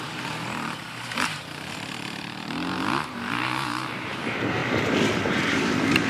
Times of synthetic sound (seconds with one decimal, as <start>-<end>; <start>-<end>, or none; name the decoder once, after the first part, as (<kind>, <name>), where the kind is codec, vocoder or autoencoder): 0.0-4.6 (vocoder, BigVGAN v2); 5.3-6.1